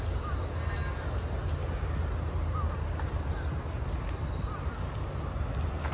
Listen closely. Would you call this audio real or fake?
real